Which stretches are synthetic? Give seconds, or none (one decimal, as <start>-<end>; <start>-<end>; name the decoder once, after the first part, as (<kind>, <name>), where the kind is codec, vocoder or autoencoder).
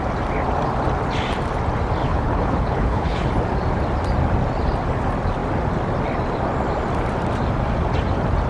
2.0-3.3 (codec, HILCodec)